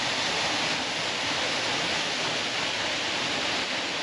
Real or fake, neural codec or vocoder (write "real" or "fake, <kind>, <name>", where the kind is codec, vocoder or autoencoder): real